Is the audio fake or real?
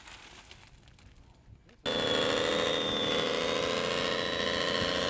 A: real